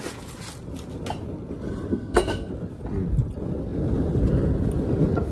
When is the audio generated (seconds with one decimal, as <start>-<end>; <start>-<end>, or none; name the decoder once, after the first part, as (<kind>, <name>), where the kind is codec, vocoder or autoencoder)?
1.9-2.5 (codec, SNAC)